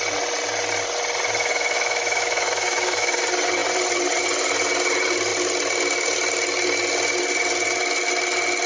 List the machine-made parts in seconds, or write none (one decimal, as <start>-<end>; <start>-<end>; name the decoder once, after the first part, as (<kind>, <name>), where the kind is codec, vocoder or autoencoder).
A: 1.4-3.2 (autoencoder, DAC-VAE)

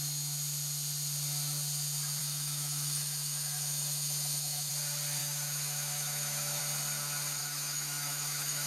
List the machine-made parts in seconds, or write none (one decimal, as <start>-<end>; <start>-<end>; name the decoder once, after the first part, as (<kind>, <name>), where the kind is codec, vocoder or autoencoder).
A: 2.2-4.7 (autoencoder, DAC-VAE); 5.2-6.6; 7.4-8.7

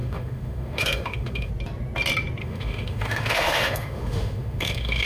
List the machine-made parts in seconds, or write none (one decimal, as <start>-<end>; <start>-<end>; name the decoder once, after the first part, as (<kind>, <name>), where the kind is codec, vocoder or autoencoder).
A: 0.0-1.5 (autoencoder, DAC-VAE); 2.4-5.1